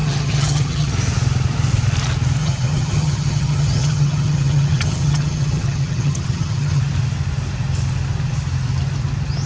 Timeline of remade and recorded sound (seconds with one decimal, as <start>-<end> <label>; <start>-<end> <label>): 0.0-0.9 remade; 0.9-2.4 recorded; 2.4-6.8 remade; 6.8-9.5 recorded